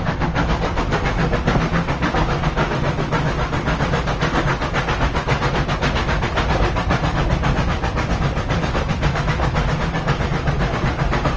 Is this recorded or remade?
recorded